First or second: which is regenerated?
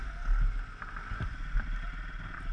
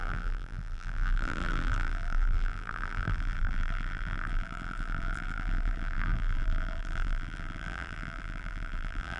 second